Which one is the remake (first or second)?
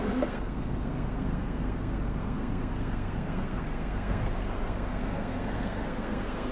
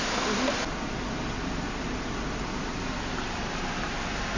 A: first